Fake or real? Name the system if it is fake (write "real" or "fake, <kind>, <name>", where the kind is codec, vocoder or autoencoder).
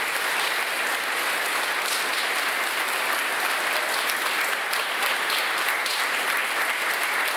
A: real